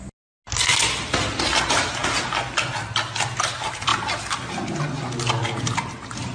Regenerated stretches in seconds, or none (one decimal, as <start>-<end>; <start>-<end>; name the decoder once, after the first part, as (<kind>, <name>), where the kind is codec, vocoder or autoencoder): none